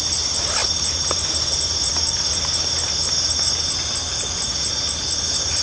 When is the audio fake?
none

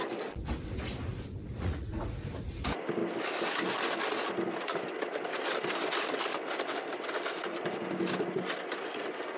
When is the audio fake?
1.5-2.3

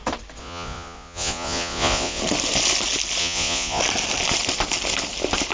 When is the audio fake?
0.4-2.2; 3.2-3.8

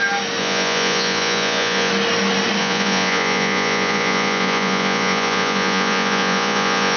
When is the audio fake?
0.4-1.9; 2.6-7.0

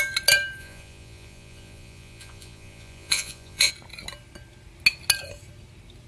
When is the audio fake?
0.6-3.7